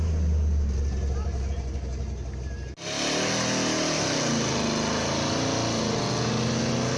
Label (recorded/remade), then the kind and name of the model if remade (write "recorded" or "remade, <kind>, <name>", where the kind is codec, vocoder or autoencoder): recorded